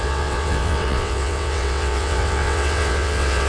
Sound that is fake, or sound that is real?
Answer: fake